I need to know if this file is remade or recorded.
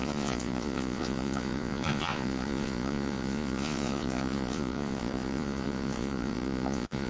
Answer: remade